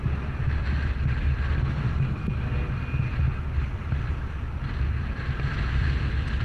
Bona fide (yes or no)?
yes